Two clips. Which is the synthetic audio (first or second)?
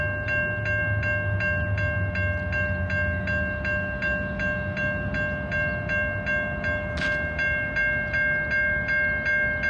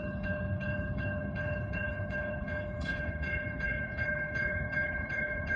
second